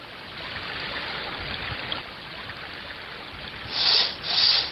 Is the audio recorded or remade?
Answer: recorded